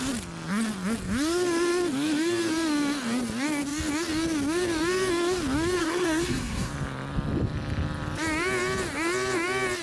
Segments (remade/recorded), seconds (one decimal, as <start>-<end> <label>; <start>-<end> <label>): 0.0-5.8 recorded; 5.8-6.7 remade; 6.7-9.8 recorded